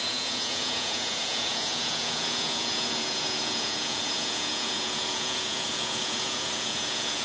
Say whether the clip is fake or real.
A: fake